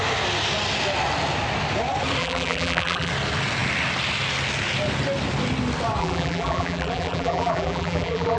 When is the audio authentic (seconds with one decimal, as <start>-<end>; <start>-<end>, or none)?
0.0-2.2; 3.1-6.0